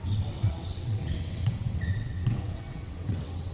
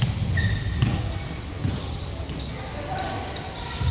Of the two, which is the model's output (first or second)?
first